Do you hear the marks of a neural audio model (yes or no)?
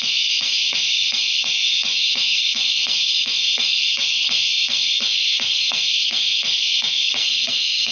yes